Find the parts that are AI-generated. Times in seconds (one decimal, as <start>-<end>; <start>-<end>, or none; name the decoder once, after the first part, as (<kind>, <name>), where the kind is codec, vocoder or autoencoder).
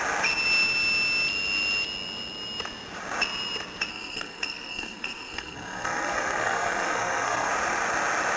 3.9-7.5 (codec, SNAC)